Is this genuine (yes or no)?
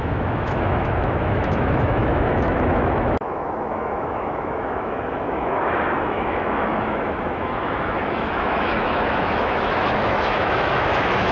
no